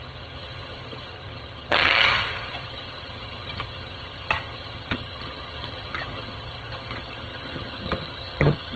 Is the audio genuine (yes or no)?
no